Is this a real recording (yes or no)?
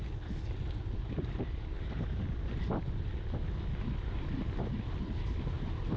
yes